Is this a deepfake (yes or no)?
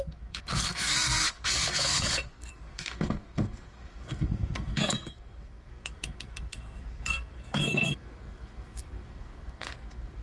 yes